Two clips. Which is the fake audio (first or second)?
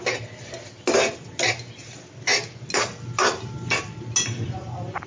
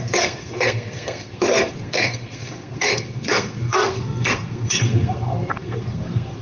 second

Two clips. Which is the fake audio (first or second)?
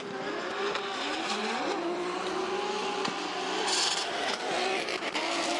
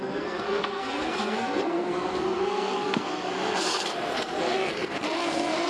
second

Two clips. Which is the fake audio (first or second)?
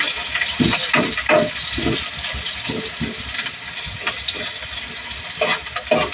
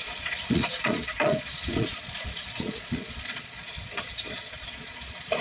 second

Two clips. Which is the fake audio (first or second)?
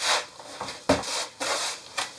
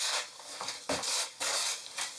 second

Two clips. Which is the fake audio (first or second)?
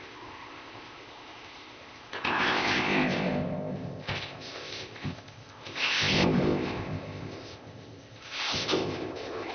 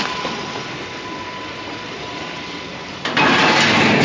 first